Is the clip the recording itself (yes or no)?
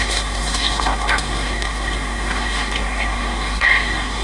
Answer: no